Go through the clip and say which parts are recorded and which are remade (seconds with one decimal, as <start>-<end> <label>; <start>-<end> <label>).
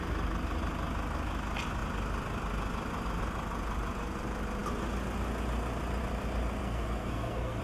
0.0-6.6 recorded; 6.6-7.6 remade